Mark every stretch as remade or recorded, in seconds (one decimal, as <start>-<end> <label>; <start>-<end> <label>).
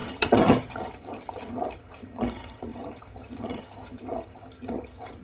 0.0-5.2 remade